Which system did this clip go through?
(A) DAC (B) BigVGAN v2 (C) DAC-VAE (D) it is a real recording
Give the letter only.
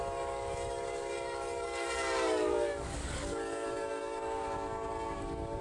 A